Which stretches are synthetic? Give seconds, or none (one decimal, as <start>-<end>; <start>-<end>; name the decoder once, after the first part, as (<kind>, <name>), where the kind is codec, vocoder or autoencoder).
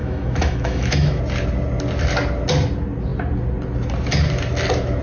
0.0-1.2 (autoencoder, DAC-VAE)